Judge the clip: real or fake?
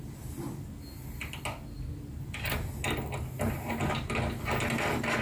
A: real